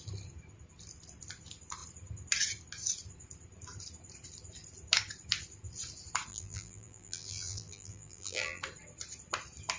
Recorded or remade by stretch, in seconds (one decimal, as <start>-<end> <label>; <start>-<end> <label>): 0.0-6.3 recorded; 6.3-8.6 remade; 8.6-9.8 recorded